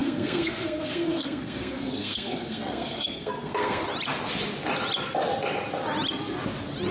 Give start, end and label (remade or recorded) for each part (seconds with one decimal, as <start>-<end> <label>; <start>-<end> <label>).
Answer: 0.0-3.8 remade; 3.8-6.9 recorded